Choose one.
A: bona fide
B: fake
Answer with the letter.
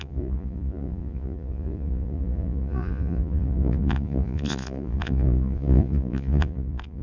B